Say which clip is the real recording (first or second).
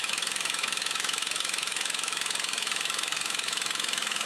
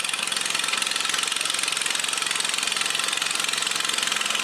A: second